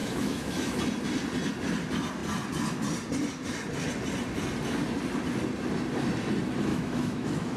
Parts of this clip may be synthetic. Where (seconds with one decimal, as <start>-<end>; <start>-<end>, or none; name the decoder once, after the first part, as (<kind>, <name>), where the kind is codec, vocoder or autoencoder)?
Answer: 0.0-0.8 (autoencoder, DAC-VAE); 6.7-7.6